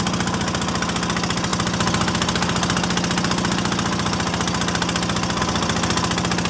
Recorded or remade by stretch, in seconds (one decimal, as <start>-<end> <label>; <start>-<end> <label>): 0.0-6.5 recorded